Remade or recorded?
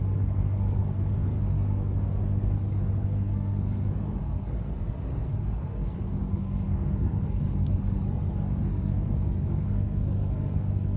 remade